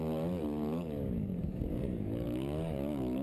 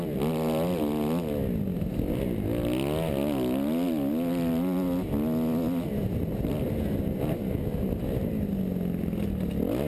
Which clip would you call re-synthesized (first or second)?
first